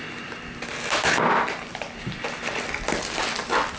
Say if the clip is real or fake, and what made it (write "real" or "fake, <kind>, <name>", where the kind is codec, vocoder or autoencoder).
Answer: real